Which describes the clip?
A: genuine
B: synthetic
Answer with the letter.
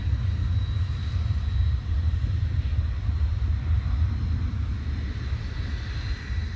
A